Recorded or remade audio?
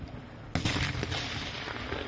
recorded